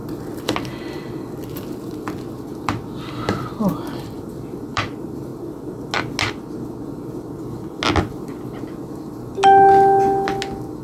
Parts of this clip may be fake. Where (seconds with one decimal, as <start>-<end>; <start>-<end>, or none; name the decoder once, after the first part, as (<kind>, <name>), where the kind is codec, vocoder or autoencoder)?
0.0-5.3 (vocoder, BigVGAN v2)